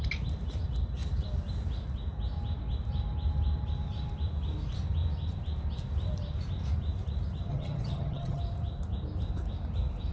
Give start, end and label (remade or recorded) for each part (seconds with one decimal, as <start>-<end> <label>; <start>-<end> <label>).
0.0-7.5 recorded; 7.5-8.4 remade; 8.4-10.1 recorded